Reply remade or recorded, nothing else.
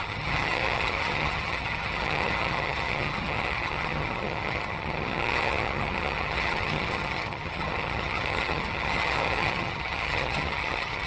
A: remade